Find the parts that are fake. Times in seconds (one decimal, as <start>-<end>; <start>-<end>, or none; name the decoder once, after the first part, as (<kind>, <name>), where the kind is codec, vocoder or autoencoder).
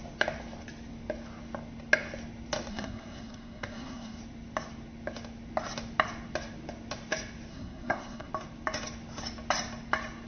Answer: 2.7-4.2 (codec, SNAC); 7.5-8.3